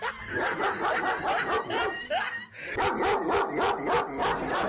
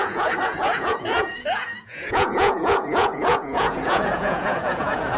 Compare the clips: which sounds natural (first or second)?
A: first